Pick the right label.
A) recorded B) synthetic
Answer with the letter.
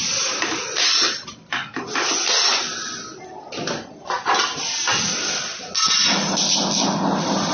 A